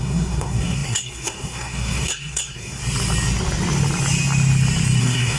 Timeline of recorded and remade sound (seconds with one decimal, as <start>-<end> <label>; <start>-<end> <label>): 0.0-2.8 remade; 2.8-5.0 recorded; 5.0-5.4 remade